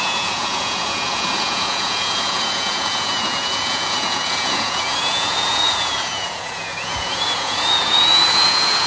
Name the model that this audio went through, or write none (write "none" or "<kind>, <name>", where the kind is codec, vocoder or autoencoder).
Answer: vocoder, Vocos